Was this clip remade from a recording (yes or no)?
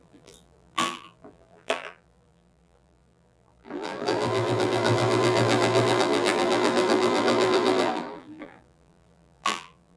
yes